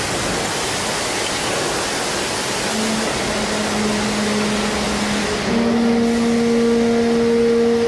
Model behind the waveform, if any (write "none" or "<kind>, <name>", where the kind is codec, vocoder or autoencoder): none